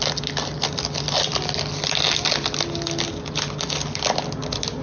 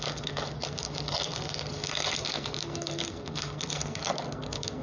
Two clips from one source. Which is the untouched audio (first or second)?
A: first